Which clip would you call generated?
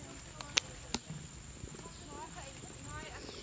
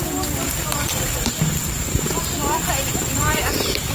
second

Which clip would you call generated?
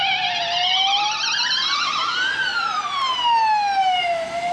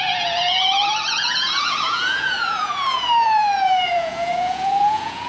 second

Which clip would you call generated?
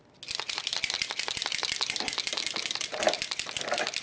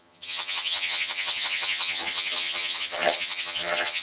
second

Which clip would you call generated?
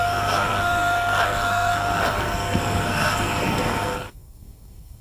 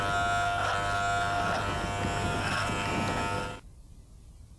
first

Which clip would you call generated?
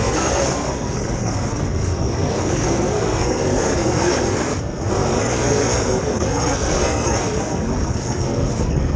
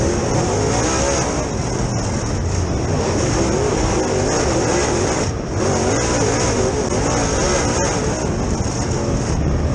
first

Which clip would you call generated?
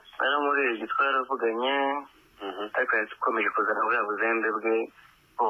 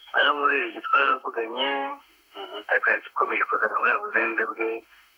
second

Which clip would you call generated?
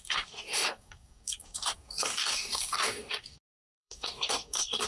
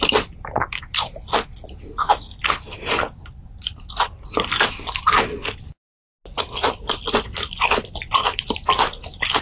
first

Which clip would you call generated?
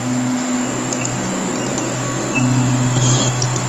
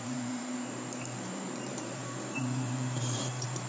second